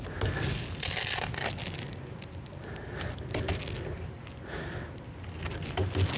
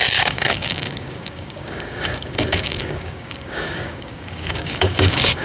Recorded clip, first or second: first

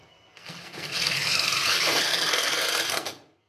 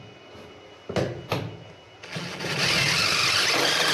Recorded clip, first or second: second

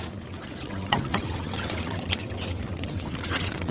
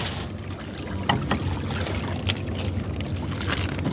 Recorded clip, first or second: second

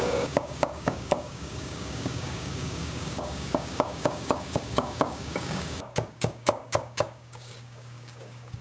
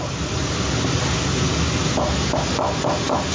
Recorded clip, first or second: second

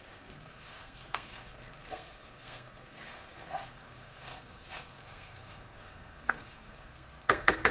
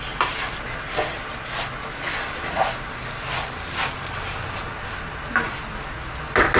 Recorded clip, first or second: second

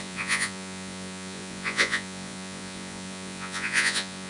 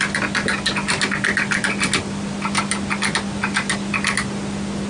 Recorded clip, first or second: second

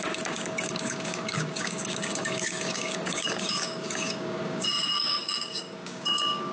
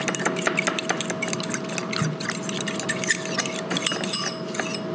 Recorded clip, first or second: second